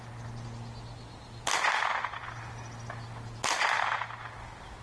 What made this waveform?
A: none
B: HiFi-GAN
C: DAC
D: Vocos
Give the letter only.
A